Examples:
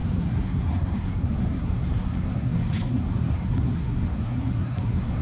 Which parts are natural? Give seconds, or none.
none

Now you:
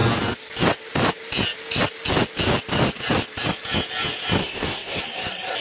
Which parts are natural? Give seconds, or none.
0.0-4.4; 5.0-5.6

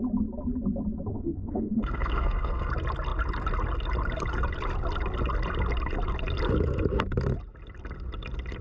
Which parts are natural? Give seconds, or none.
0.0-1.1; 2.7-8.6

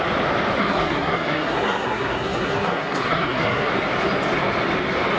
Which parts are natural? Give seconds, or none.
0.0-0.6; 3.7-5.2

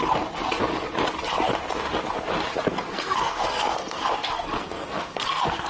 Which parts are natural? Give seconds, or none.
0.0-2.7

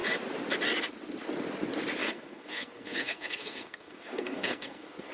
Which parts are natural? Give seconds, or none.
0.0-2.0